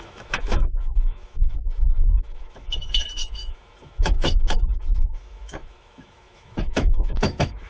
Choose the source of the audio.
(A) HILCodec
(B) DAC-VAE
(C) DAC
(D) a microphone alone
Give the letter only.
B